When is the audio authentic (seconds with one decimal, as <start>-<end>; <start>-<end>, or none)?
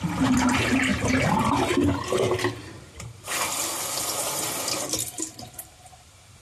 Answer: 0.0-6.4